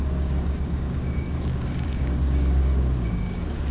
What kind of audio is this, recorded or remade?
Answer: remade